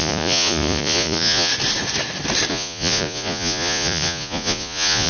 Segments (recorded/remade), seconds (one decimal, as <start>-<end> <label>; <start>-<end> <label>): 0.0-1.5 remade; 1.5-2.5 recorded; 2.5-5.1 remade